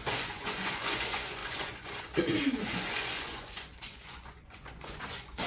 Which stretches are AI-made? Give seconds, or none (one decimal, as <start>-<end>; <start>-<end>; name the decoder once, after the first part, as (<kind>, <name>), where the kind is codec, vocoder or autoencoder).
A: 0.0-5.5 (vocoder, Vocos)